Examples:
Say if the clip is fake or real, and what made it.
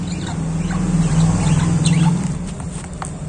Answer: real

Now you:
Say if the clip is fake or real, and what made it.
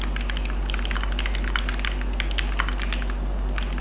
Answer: real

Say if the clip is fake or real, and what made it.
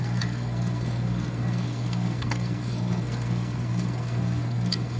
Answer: fake, codec, SNAC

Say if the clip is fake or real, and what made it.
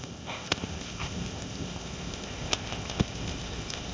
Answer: fake, codec, ZipCodec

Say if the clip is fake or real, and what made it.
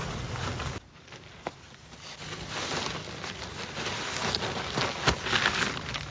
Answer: real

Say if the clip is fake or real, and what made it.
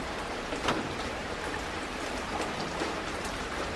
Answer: fake, vocoder, BigVGAN v2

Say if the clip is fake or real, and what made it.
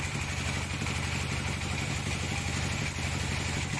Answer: real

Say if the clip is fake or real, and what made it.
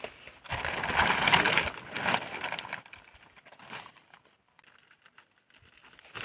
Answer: real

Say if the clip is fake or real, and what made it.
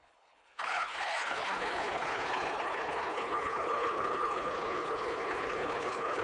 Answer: fake, codec, HILCodec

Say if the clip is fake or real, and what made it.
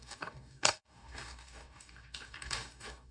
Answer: fake, codec, DAC